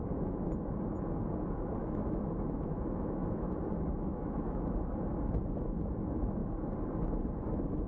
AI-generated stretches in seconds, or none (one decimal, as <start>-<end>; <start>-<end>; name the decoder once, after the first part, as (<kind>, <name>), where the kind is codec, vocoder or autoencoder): 1.8-3.6 (autoencoder, DAC-VAE); 4.1-4.6